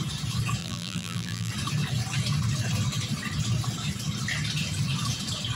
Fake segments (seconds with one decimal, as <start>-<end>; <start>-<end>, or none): 0.6-1.5